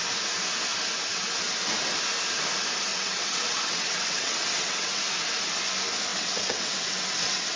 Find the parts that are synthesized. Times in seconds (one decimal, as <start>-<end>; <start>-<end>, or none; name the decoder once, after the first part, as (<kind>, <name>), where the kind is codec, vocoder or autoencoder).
2.9-5.0 (vocoder, WaveNeXt); 6.1-7.6